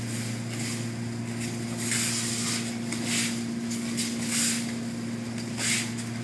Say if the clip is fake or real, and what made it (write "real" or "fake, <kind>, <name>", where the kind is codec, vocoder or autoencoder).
real